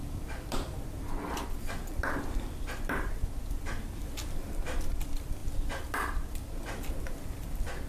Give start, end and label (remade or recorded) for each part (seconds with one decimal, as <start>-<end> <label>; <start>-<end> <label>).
0.0-7.9 remade